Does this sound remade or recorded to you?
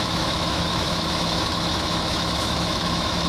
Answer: remade